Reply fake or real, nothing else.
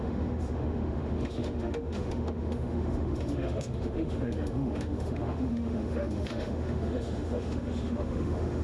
fake